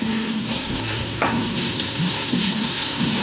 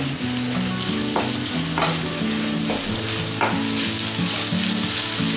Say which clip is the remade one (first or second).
first